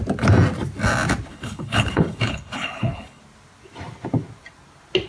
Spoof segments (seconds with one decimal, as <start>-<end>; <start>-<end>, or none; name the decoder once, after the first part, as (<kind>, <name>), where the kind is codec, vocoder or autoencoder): 1.3-3.2 (codec, HILCodec)